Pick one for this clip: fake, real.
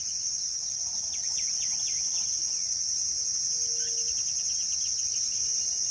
real